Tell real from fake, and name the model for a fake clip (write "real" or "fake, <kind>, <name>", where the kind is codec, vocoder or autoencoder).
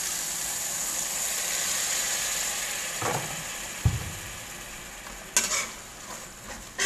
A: real